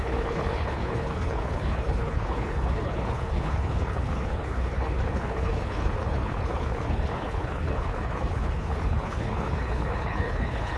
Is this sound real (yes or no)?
no